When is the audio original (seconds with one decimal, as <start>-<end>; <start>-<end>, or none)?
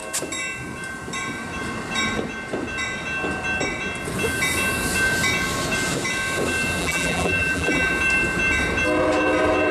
0.0-6.8; 7.9-9.7